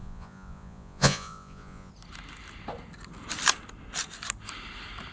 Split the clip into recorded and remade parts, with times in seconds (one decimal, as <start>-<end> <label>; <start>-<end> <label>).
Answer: 0.0-1.9 remade; 1.9-5.1 recorded